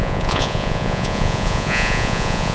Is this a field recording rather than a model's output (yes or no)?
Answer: no